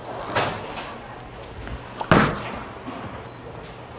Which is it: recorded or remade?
recorded